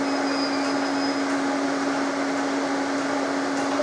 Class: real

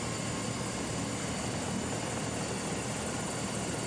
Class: real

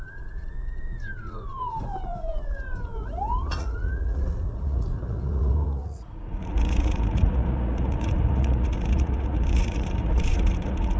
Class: fake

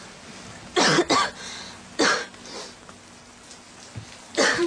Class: real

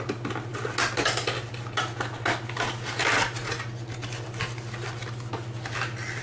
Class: real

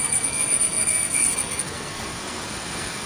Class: fake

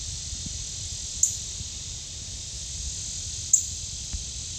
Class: real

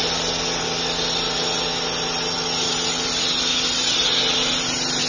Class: real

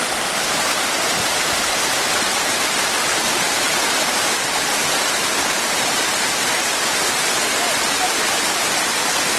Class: fake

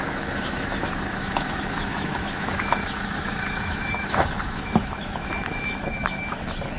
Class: fake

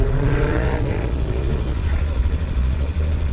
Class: fake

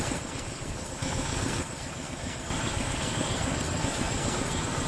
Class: fake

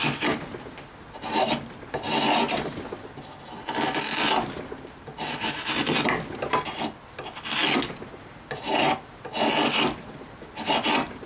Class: real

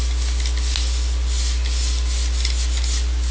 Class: real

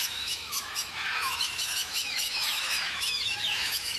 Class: fake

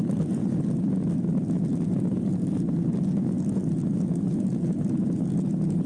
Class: real